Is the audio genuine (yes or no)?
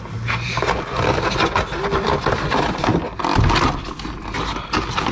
yes